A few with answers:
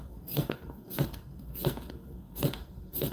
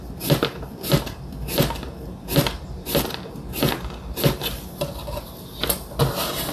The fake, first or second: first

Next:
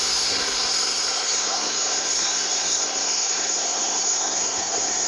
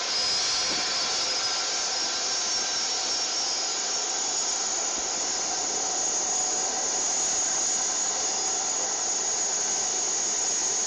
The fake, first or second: first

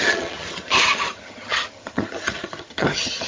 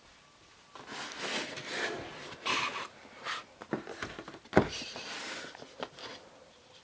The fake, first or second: first